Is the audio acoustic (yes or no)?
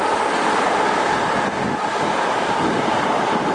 yes